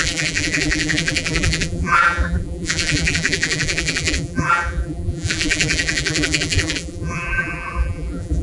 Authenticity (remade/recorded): remade